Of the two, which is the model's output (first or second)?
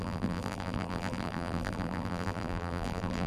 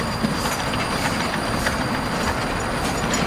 first